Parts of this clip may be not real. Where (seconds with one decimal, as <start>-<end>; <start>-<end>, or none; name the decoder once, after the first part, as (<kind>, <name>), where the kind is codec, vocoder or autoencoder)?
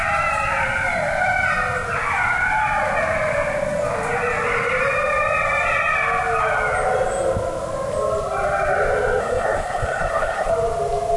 9.2-10.5 (codec, SNAC)